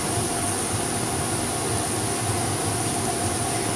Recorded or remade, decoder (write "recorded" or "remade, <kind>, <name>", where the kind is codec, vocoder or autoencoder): recorded